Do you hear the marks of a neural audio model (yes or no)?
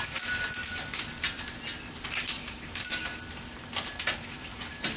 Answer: no